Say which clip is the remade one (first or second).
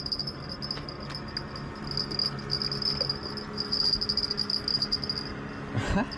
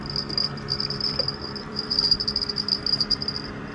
second